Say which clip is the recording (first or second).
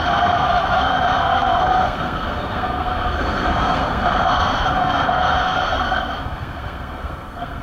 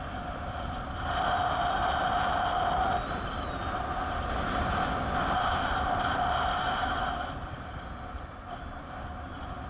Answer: second